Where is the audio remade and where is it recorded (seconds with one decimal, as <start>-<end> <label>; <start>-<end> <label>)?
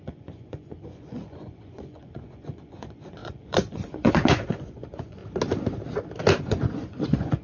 0.0-5.2 remade; 5.2-6.4 recorded; 6.4-7.4 remade